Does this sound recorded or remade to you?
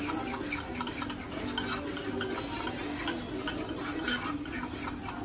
recorded